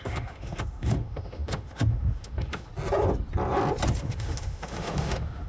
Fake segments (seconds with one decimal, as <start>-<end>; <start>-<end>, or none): 0.0-2.7; 4.0-5.5